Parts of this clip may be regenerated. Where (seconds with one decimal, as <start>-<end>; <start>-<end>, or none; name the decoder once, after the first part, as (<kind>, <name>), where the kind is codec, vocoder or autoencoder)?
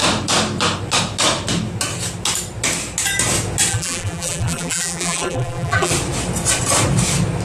3.7-5.9 (vocoder, BigVGAN v2)